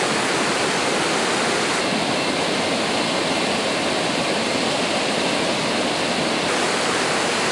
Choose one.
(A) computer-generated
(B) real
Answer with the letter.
B